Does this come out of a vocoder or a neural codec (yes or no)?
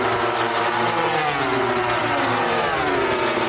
no